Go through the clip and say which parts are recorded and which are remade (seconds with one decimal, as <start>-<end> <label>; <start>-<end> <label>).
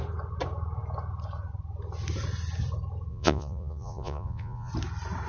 0.0-3.1 recorded; 3.1-4.7 remade; 4.7-5.3 recorded